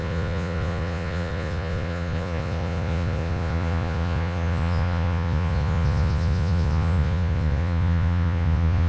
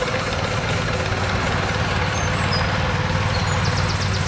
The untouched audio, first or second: second